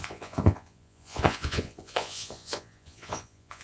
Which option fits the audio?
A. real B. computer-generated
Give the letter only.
B